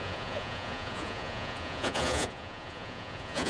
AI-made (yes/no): yes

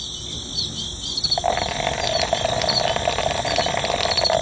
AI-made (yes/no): no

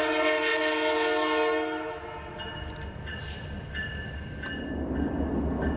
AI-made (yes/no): no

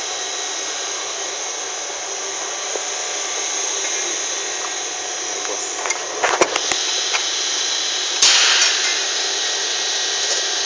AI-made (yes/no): no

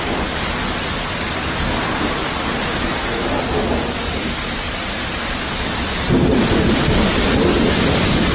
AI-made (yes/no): no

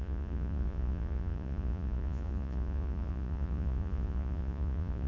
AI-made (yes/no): yes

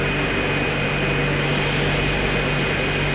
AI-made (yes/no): no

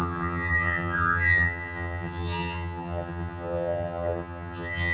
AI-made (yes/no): yes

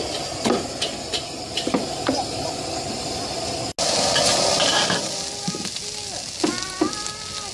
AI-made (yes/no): no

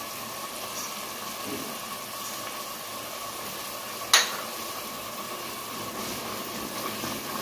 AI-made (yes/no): no